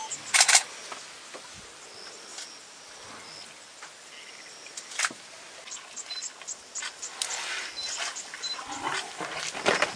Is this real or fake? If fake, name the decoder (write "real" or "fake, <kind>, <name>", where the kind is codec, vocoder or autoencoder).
real